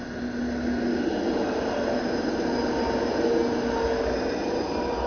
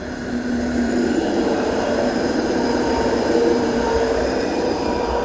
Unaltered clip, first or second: first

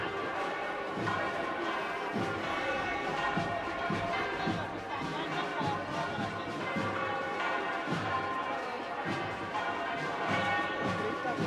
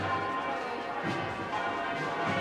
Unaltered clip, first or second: second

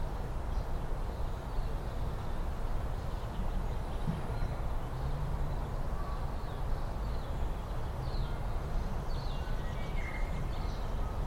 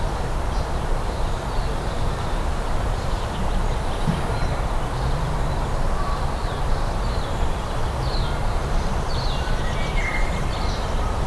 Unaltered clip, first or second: first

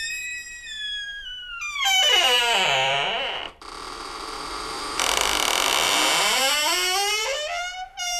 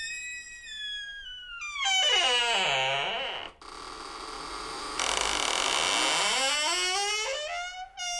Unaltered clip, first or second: second